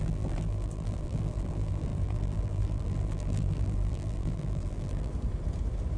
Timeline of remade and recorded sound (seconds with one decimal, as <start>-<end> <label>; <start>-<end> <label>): 0.0-5.1 remade; 5.1-6.0 recorded